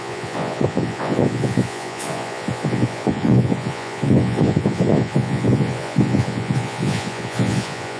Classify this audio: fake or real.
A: fake